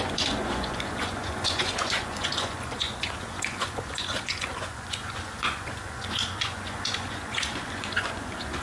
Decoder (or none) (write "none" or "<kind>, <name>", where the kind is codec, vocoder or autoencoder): vocoder, Vocos